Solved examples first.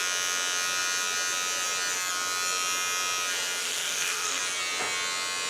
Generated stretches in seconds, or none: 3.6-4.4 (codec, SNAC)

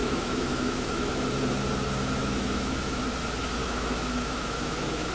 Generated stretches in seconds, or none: 0.0-1.1 (autoencoder, DAC-VAE); 2.2-3.0; 3.6-5.1

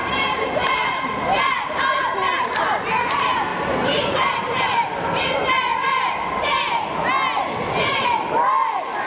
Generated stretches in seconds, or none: 0.0-1.5 (vocoder, BigVGAN v2); 3.5-5.2